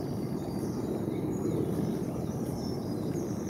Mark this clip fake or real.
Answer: fake